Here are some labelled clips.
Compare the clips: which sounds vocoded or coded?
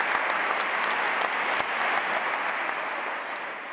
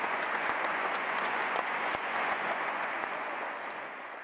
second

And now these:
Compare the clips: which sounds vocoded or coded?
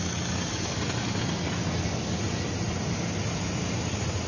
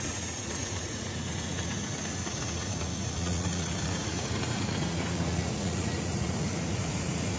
second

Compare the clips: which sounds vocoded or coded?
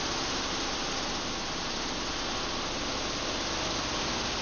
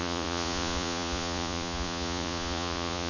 second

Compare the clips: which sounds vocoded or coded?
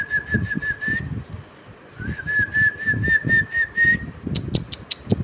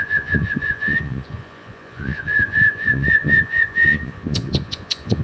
second